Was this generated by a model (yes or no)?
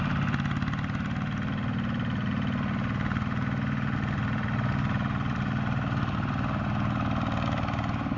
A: no